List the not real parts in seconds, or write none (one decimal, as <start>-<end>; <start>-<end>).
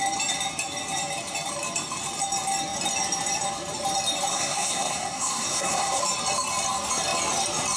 4.3-6.0